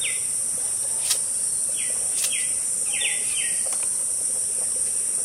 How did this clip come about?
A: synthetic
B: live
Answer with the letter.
A